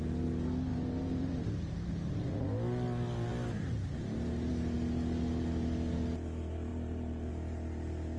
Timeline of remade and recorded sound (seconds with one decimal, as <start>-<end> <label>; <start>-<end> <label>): 0.0-0.7 recorded; 0.7-1.9 remade; 1.9-6.7 recorded; 6.7-7.3 remade; 7.3-8.2 recorded

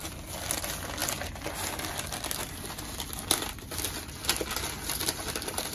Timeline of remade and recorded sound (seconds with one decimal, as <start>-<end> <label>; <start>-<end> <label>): 0.0-5.7 recorded

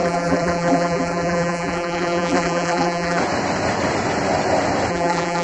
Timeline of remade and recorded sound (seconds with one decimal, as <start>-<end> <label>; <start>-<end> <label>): 0.0-3.2 remade; 3.2-4.9 recorded; 4.9-5.4 remade

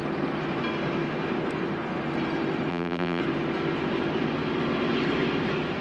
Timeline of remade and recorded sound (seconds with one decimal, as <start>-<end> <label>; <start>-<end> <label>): 0.0-2.7 recorded; 2.7-3.2 remade; 3.2-5.8 recorded